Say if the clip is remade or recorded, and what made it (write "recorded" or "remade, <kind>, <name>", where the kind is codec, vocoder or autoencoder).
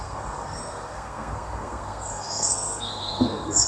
remade, codec, SNAC